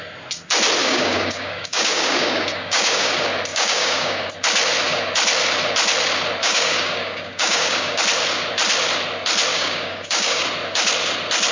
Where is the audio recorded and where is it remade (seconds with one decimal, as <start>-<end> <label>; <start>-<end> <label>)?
0.0-0.8 recorded; 0.8-3.1 remade; 3.1-3.5 recorded; 3.5-4.3 remade; 4.3-6.4 recorded; 6.4-8.0 remade; 8.0-9.5 recorded; 9.5-10.4 remade; 10.4-11.5 recorded